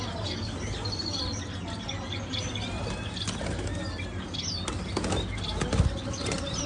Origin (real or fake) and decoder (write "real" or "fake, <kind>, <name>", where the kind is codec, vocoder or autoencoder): real